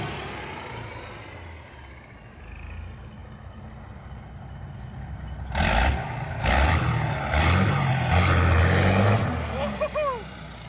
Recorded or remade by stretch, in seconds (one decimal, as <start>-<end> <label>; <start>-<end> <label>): 0.0-10.7 recorded